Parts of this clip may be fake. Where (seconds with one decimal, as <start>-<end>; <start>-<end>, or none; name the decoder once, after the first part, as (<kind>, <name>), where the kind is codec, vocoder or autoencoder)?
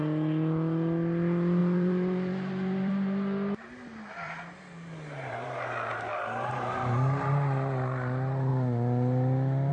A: 1.6-2.9 (vocoder, BigVGAN v2); 5.9-6.5